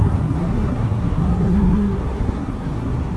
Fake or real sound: fake